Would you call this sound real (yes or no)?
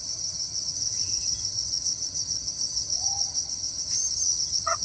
no